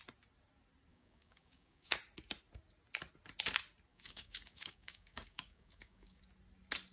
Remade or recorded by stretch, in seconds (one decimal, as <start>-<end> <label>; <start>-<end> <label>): 0.0-0.9 recorded; 0.9-2.0 remade; 2.0-3.9 recorded; 3.9-6.2 remade; 6.2-6.9 recorded